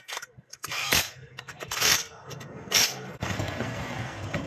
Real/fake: fake